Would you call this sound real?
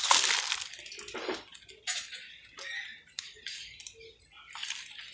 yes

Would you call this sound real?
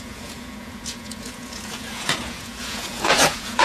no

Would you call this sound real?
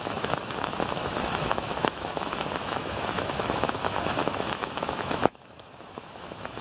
no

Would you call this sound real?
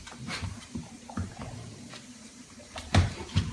no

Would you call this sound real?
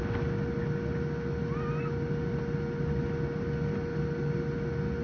yes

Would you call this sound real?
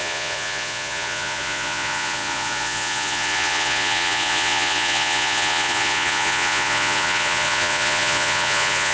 no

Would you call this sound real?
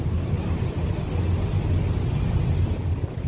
yes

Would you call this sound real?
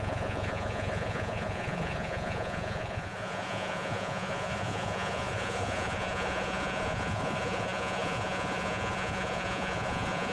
no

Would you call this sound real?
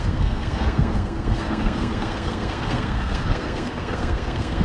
no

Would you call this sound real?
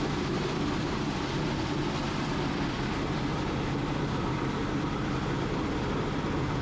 no